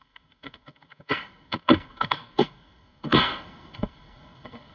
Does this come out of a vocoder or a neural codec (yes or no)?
yes